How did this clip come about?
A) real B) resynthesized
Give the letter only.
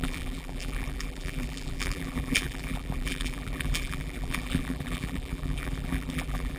B